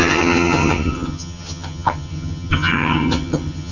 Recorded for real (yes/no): no